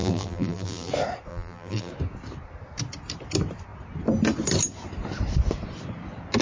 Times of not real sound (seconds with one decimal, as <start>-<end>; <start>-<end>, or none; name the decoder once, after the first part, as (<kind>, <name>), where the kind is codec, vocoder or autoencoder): 0.0-0.9 (vocoder, BigVGAN v2); 1.3-1.9